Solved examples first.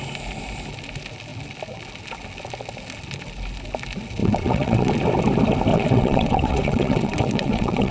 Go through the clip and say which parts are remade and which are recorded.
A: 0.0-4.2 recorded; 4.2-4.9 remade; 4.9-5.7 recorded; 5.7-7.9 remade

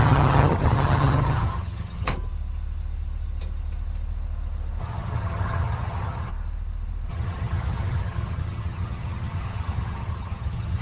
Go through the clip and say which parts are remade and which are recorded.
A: 0.0-2.1 remade; 2.1-4.8 recorded; 4.8-6.3 remade; 6.3-7.1 recorded; 7.1-10.8 remade

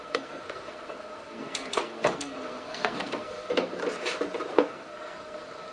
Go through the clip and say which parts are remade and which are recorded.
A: 0.0-3.8 remade; 3.8-4.5 recorded; 4.5-5.7 remade

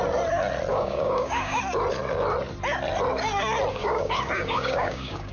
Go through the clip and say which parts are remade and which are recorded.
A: 0.0-0.7 recorded; 0.7-1.6 remade; 1.6-3.7 recorded; 3.7-5.3 remade

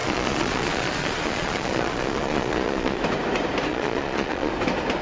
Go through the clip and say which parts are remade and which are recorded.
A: 0.0-3.0 remade; 3.0-3.7 recorded; 3.7-4.5 remade; 4.5-5.0 recorded

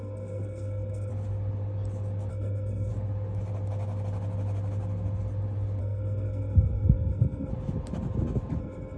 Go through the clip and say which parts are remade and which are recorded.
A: 0.0-1.1 remade; 1.1-2.3 recorded; 2.3-2.9 remade; 2.9-5.8 recorded; 5.8-7.5 remade; 7.5-8.6 recorded; 8.6-9.0 remade

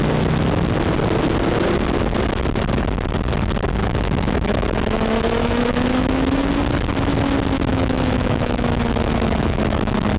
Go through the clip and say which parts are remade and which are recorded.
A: 0.0-3.8 recorded; 3.8-6.5 remade; 6.5-7.7 recorded; 7.7-10.2 remade

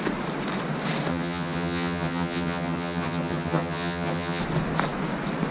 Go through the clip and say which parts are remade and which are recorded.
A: 0.0-1.1 recorded; 1.1-4.4 remade; 4.4-5.5 recorded